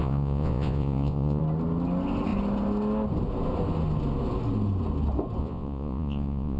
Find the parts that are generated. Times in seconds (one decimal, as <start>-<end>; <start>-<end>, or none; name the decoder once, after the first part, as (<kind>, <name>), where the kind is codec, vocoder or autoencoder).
0.0-1.4 (vocoder, Vocos); 5.4-6.6